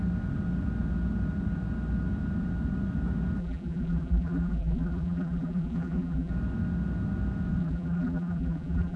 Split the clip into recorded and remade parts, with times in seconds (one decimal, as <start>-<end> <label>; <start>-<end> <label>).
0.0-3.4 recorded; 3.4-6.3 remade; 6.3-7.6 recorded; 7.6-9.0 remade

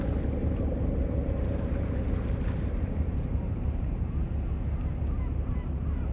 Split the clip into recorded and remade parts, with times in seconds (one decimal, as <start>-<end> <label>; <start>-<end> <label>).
0.0-0.4 recorded; 0.4-4.1 remade; 4.1-6.1 recorded

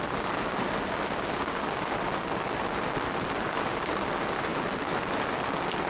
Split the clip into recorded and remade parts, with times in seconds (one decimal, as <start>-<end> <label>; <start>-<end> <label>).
0.0-5.9 recorded

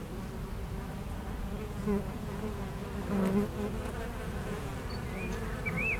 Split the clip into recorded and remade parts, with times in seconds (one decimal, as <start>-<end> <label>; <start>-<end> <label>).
0.0-1.4 recorded; 1.4-2.8 remade; 2.8-4.0 recorded; 4.0-4.7 remade; 4.7-6.0 recorded

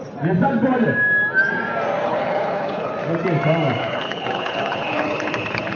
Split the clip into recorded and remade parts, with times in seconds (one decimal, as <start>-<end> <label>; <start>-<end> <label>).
0.0-2.0 recorded; 2.0-2.9 remade; 2.9-3.8 recorded; 3.8-5.8 remade

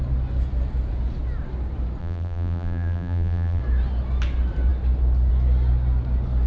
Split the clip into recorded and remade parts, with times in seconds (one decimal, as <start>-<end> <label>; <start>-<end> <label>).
0.0-2.0 recorded; 2.0-3.6 remade; 3.6-6.5 recorded

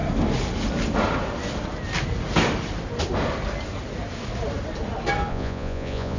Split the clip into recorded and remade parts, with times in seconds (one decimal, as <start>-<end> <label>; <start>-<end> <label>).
0.0-5.3 recorded; 5.3-6.2 remade

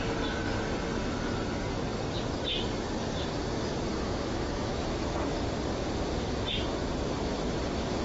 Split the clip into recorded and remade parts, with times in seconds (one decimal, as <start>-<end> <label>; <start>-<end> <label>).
0.0-3.9 recorded; 3.9-4.7 remade; 4.7-8.0 recorded